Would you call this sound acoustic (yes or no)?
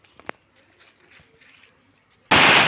yes